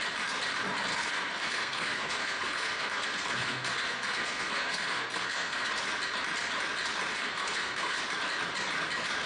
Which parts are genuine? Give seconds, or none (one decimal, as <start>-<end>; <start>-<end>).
0.0-0.9; 5.7-7.1; 8.0-9.3